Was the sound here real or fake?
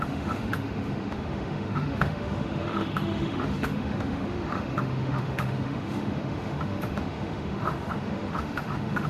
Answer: fake